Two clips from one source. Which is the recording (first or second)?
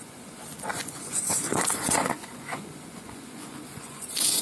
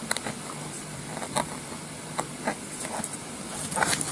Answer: second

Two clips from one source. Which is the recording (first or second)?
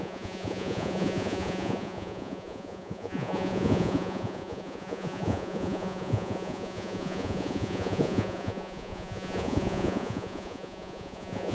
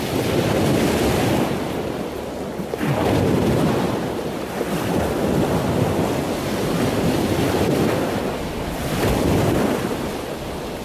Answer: second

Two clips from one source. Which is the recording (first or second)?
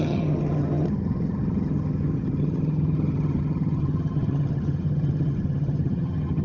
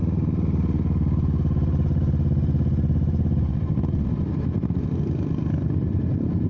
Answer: second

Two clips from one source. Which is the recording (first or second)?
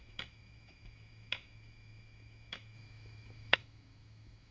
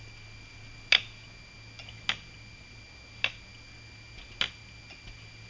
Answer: second